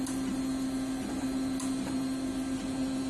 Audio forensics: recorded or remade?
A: recorded